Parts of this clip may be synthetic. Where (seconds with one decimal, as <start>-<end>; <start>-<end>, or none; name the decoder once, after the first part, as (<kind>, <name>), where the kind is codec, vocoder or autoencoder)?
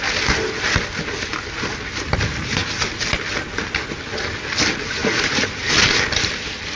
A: 5.0-6.0 (vocoder, BigVGAN v2)